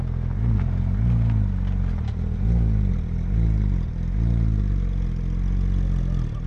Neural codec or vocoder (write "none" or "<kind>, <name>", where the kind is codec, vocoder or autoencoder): none